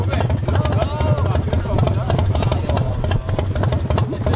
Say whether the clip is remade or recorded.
recorded